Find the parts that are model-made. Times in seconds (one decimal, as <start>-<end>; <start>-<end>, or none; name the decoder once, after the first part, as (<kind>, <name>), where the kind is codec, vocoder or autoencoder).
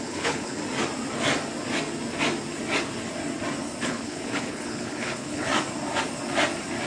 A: 0.0-0.6 (codec, HILCodec); 3.8-5.5